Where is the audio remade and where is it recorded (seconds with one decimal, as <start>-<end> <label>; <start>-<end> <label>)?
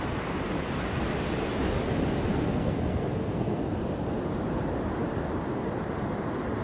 0.0-2.3 recorded; 2.3-3.6 remade; 3.6-6.6 recorded